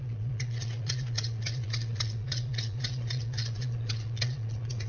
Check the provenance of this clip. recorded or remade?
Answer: remade